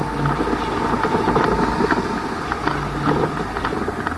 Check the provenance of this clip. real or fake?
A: real